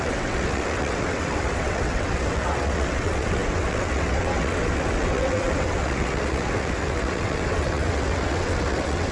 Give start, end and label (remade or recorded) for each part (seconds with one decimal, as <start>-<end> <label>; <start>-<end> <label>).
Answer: 0.0-9.1 remade